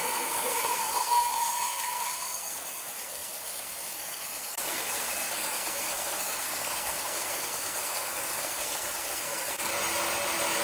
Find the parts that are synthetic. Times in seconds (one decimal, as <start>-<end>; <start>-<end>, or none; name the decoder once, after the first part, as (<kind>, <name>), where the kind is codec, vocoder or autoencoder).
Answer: 0.0-9.7 (codec, SNAC)